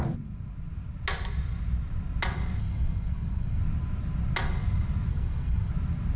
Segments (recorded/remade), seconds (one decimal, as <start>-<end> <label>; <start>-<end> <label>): 0.0-2.6 recorded; 2.6-3.6 remade; 3.6-5.1 recorded; 5.1-5.7 remade; 5.7-6.2 recorded